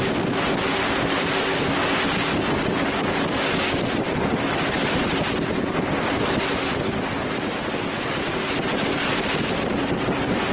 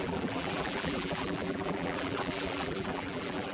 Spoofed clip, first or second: second